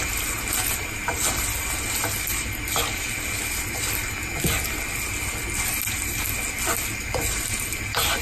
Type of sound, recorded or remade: recorded